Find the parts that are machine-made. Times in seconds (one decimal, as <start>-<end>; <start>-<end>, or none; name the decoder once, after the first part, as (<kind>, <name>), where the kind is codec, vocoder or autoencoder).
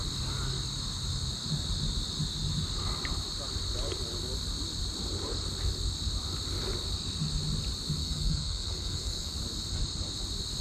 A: 8.0-9.3 (codec, SNAC)